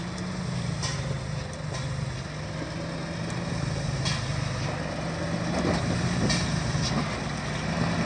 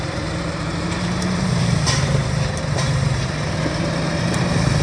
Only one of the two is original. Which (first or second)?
first